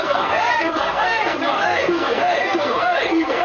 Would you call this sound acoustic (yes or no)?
no